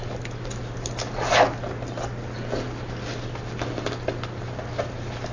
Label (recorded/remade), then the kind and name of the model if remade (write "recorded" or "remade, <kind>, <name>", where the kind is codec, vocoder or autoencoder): recorded